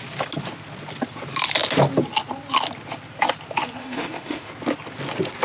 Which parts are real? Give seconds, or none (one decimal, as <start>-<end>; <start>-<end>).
0.0-3.8; 4.5-5.4